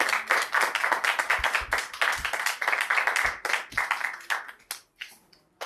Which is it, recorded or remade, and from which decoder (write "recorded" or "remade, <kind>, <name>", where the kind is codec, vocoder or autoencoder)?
recorded